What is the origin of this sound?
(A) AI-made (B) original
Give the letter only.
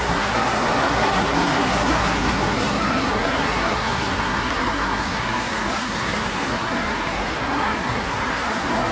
A